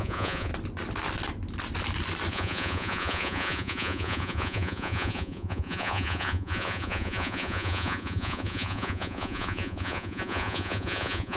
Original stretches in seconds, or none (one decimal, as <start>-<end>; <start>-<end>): 0.5-2.3